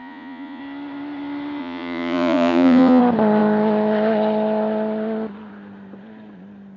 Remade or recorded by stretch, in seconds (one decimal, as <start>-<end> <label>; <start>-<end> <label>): 0.0-0.6 remade; 0.6-1.6 recorded; 1.6-3.0 remade; 3.0-6.8 recorded